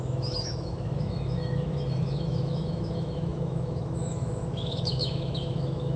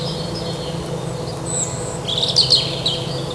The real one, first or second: second